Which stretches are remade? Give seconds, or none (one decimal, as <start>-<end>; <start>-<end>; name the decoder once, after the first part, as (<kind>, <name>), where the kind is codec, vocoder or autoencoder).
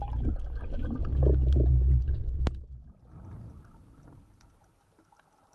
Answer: none